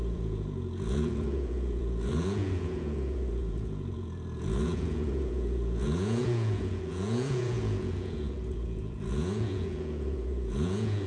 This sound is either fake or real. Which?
fake